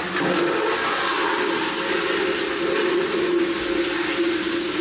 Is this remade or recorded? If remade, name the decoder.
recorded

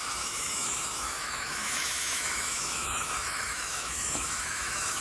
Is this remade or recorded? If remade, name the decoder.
remade, autoencoder, DAC-VAE